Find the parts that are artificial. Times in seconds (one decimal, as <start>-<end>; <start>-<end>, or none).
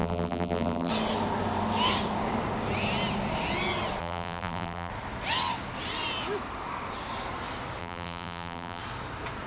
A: 0.0-0.9; 4.0-4.9; 7.8-8.8